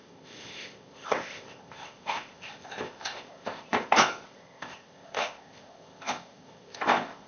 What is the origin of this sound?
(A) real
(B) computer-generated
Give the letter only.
B